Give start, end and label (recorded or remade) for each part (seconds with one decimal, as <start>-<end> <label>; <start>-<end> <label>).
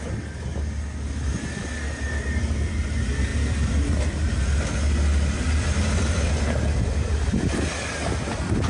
0.0-8.7 recorded